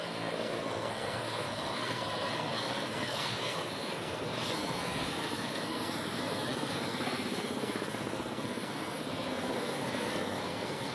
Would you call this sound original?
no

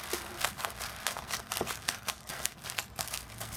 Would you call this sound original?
no